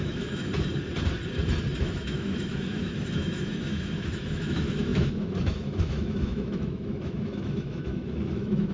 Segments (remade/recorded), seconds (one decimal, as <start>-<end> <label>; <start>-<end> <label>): 0.0-0.5 remade; 0.5-1.8 recorded; 1.8-8.7 remade